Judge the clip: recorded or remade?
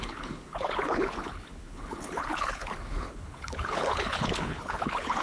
remade